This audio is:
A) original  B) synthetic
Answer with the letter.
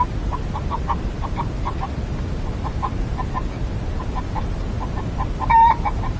A